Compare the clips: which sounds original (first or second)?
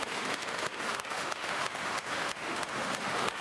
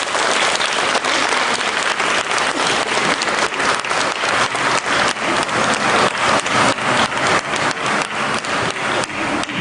second